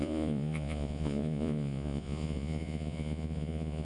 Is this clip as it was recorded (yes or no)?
no